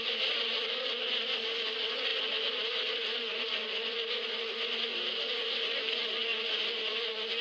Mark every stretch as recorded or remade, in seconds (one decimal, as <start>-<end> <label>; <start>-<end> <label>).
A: 0.0-7.4 recorded